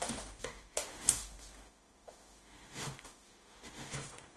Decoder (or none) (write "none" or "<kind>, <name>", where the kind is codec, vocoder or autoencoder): autoencoder, DAC-VAE